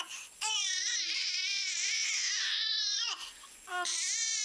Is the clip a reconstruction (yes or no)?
yes